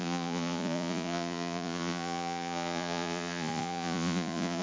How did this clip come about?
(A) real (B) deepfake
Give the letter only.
B